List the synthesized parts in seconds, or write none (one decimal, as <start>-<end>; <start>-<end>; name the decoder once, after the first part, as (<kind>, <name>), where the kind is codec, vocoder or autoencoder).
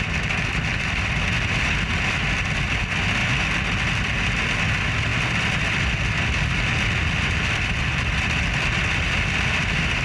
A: 0.7-1.5 (vocoder, BigVGAN v2); 5.1-8.7